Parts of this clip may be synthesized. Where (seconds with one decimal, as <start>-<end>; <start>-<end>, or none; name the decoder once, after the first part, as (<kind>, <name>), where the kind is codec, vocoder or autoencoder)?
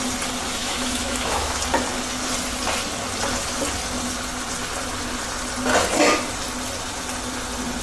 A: 0.6-1.6 (autoencoder, DAC-VAE)